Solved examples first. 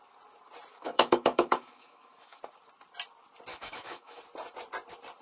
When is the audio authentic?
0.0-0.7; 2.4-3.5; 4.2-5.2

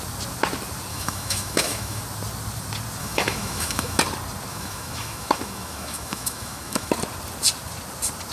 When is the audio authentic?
0.0-0.9; 2.0-3.0; 4.0-4.5; 6.9-8.3

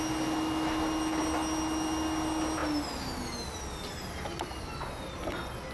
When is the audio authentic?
0.0-5.7

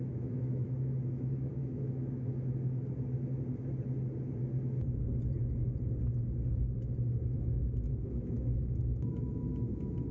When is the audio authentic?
2.8-6.5

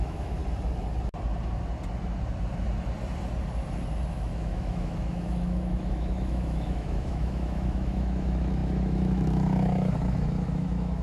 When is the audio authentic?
0.4-4.1

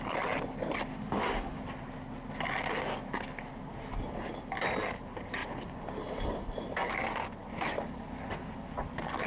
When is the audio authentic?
0.0-0.9; 1.6-9.3